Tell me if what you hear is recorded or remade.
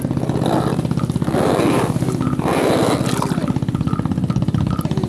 recorded